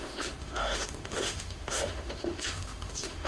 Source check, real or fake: fake